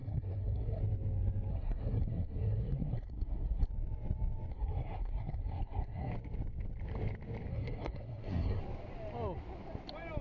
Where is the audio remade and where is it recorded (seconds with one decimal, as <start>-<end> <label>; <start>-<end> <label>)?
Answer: 0.0-0.8 remade; 0.8-1.5 recorded; 1.5-3.7 remade; 3.7-4.5 recorded; 4.5-6.1 remade; 6.1-7.5 recorded; 7.5-8.6 remade; 8.6-10.2 recorded